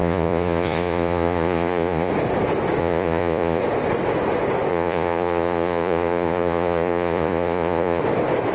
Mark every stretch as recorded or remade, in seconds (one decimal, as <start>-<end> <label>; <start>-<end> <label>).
0.0-2.1 remade; 2.1-2.8 recorded; 2.8-3.6 remade; 3.6-4.7 recorded; 4.7-8.0 remade; 8.0-8.5 recorded